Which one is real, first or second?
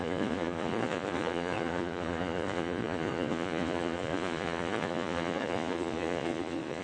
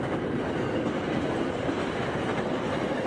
second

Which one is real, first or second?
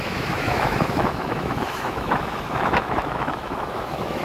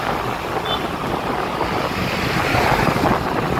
second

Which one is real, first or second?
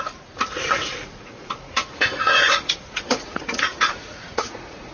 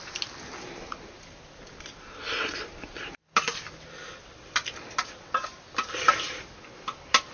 second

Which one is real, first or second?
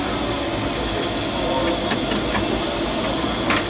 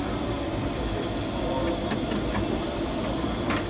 first